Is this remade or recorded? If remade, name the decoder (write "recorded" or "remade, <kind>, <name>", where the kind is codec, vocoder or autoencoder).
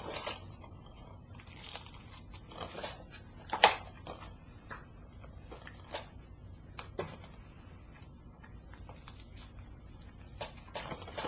remade, vocoder, BigVGAN v2